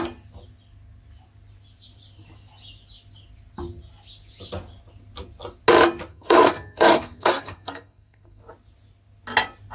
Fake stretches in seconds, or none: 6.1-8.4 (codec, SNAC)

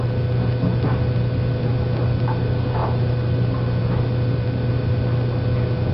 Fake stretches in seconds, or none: none

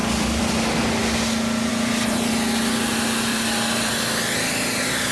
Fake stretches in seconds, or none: 0.0-0.8 (vocoder, BigVGAN v2); 1.7-2.3; 3.3-3.9